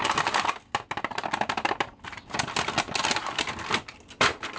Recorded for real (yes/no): yes